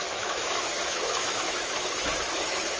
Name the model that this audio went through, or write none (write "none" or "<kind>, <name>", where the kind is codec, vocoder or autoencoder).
autoencoder, DAC-VAE